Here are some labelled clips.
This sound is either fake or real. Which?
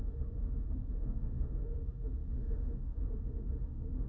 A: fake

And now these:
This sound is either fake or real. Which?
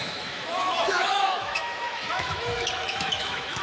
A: fake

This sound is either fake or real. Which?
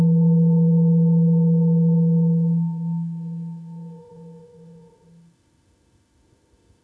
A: fake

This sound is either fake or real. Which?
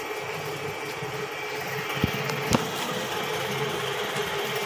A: real